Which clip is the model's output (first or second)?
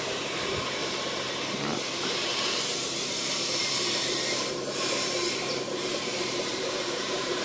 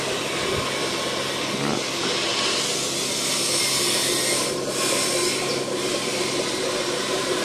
first